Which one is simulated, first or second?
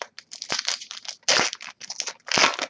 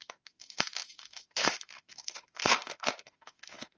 second